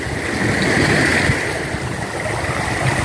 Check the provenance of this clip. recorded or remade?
recorded